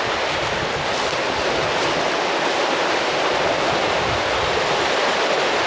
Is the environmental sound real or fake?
real